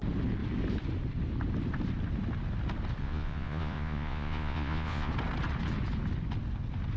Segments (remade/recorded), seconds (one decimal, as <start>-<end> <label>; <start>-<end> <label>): 0.0-3.0 recorded; 3.0-5.1 remade; 5.1-7.0 recorded